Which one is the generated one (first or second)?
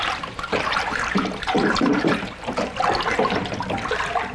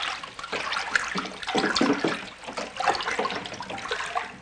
first